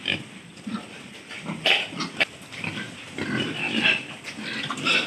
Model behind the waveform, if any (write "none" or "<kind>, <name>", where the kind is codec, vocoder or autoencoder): none